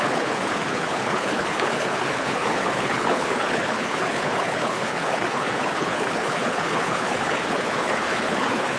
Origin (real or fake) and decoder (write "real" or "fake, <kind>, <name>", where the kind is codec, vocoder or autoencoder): fake, codec, HILCodec